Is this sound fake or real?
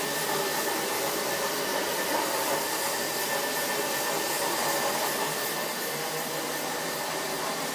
fake